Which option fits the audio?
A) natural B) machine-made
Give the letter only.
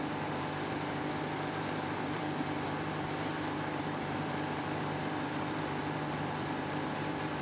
B